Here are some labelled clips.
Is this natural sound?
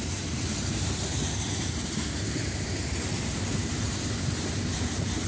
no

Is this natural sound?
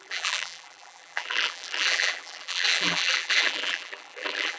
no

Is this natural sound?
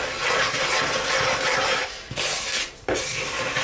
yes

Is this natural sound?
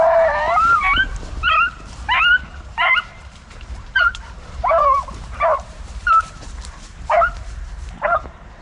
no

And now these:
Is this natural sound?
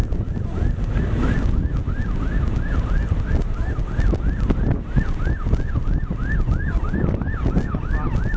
yes